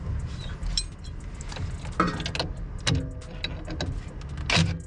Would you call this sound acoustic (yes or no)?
yes